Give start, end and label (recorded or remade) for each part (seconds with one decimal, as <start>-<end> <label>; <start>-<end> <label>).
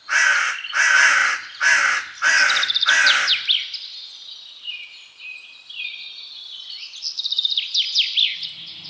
0.0-8.9 recorded